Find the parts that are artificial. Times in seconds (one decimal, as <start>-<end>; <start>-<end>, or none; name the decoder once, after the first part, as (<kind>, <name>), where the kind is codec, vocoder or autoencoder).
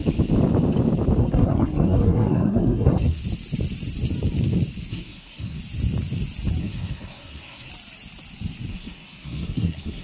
1.2-3.2 (codec, SNAC); 4.9-5.6; 6.6-7.7; 8.7-10.0